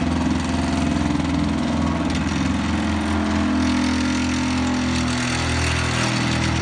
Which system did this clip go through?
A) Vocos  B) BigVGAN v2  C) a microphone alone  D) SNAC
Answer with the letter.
C